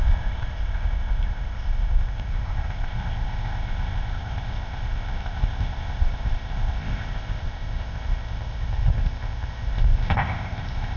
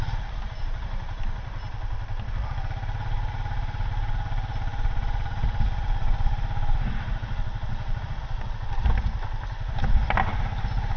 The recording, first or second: second